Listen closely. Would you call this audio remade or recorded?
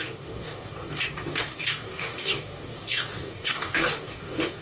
remade